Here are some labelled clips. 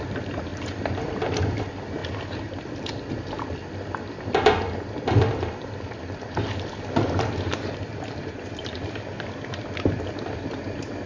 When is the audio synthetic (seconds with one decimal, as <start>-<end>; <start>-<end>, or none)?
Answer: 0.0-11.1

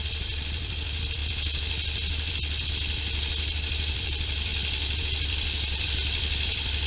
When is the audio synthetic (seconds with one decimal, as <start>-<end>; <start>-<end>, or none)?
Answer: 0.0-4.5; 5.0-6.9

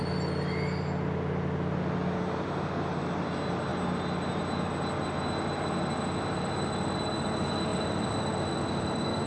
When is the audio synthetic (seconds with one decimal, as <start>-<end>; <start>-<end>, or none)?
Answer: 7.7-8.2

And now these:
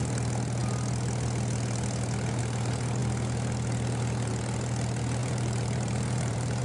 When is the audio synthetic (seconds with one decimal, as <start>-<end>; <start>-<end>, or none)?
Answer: 5.2-6.6

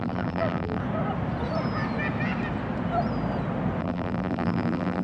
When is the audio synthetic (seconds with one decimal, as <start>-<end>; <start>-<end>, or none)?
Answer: 0.0-0.8; 3.8-5.0

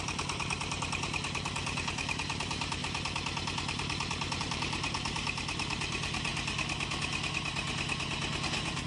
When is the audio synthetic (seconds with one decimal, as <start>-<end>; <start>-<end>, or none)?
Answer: 0.0-2.8; 4.4-6.3

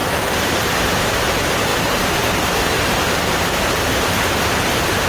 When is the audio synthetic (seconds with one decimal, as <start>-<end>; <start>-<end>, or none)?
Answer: 0.0-1.2; 1.7-5.1

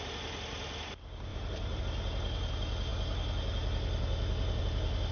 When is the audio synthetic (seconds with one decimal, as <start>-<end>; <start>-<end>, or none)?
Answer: 1.3-1.8